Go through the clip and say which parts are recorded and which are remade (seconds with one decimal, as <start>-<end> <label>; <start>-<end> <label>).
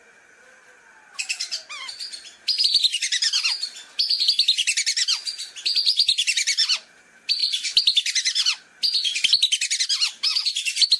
0.0-11.0 recorded